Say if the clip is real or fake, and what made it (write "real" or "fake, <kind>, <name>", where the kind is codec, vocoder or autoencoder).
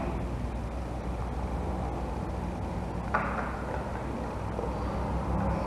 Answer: real